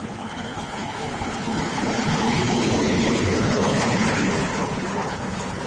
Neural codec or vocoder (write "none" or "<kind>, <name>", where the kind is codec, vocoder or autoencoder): codec, HILCodec